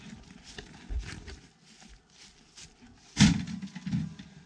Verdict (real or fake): real